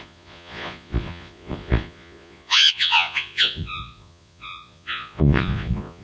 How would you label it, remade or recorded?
remade